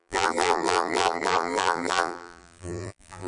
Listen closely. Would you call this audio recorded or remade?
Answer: remade